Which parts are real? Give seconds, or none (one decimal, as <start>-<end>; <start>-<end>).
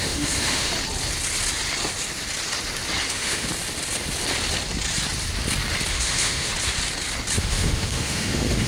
0.7-3.1; 3.5-5.9; 6.5-7.4